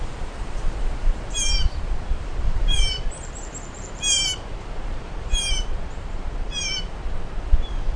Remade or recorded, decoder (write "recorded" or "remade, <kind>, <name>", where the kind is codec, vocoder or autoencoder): remade, vocoder, BigVGAN v2